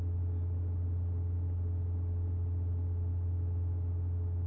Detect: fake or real real